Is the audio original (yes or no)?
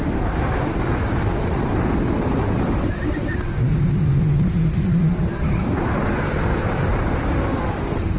no